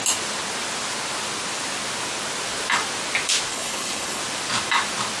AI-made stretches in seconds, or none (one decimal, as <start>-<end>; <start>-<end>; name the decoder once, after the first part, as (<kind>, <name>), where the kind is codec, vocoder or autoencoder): 3.5-4.2 (codec, HILCodec)